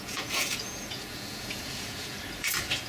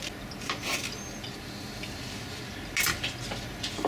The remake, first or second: first